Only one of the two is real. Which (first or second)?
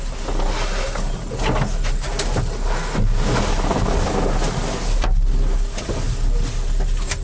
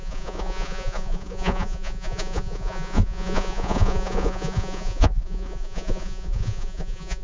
first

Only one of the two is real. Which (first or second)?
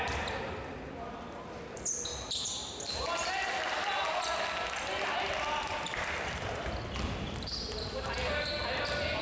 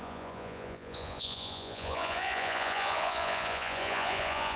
first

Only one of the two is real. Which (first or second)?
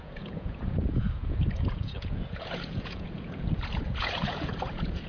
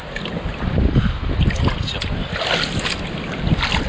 second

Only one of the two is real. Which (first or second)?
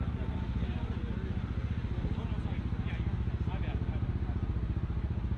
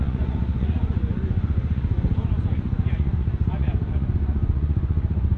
first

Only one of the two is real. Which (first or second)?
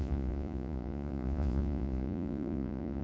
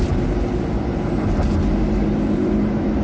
second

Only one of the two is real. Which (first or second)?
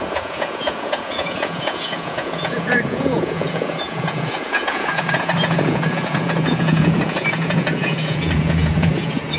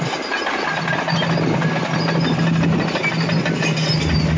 second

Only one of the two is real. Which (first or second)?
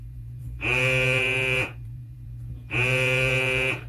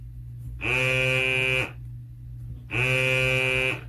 second